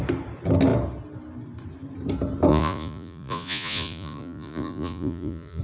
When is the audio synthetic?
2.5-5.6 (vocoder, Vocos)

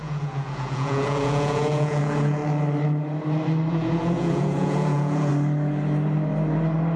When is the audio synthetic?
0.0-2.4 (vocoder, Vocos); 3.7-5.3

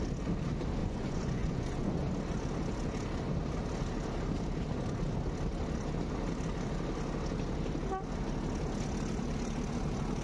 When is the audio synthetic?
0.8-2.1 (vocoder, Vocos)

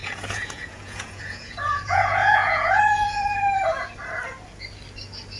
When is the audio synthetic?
0.0-3.2 (vocoder, Vocos)